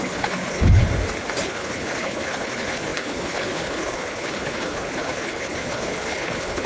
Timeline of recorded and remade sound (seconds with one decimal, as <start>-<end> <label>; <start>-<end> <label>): 0.0-0.8 remade; 0.8-1.4 recorded; 1.4-6.7 remade